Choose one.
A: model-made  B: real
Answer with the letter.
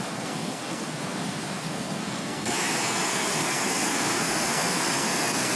A